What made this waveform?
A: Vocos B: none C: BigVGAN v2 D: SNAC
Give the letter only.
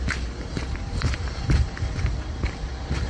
C